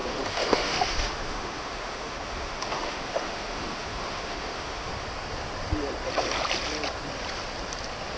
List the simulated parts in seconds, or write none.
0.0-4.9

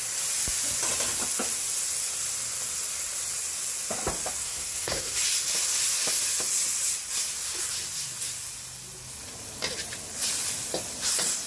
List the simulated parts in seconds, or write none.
4.4-5.2

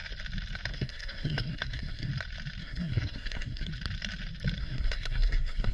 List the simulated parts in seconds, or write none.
0.7-2.1; 2.6-3.7; 4.6-5.7

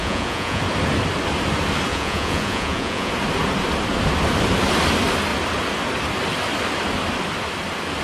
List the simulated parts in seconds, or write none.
0.0-0.6; 1.9-3.1

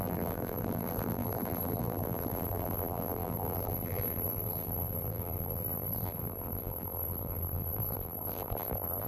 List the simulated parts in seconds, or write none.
0.0-9.1

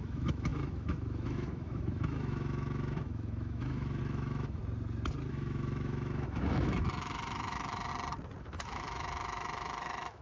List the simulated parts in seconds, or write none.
0.0-4.6; 5.3-7.9; 8.4-10.2

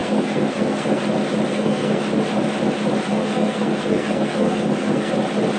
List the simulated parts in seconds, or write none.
0.0-1.0; 1.5-2.0; 3.1-5.1

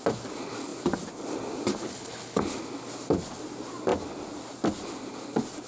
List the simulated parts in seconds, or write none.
1.9-2.4